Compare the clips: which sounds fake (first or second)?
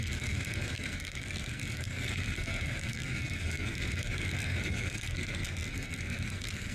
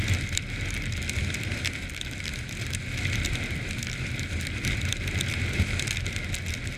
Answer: first